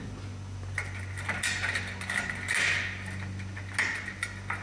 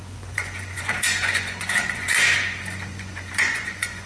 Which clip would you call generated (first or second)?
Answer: second